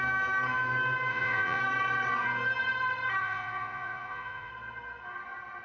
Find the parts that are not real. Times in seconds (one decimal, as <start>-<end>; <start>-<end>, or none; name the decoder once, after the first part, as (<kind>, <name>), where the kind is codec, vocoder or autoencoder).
1.1-1.6 (vocoder, Vocos); 3.2-4.5